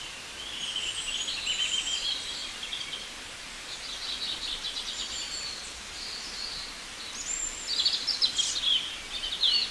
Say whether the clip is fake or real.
real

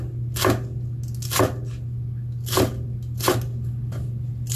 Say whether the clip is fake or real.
real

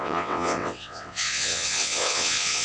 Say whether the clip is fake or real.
fake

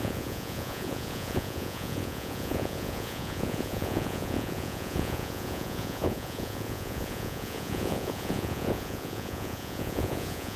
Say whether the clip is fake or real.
fake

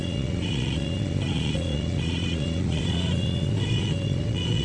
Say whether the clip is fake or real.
fake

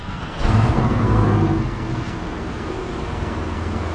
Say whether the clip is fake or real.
fake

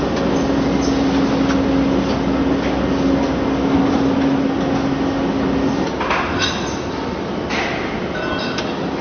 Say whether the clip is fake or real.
real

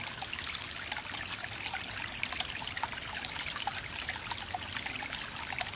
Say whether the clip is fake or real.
real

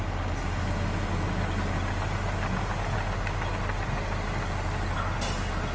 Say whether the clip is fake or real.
real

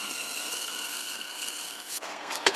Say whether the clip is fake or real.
fake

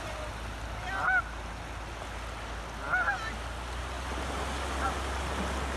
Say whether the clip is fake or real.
real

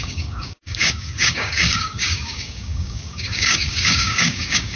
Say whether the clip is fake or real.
fake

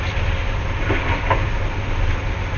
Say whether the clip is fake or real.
real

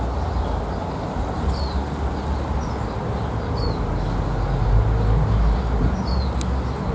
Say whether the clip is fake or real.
real